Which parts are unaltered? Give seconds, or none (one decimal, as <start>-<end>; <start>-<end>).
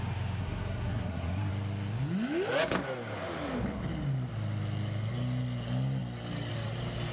0.0-0.4; 1.5-7.1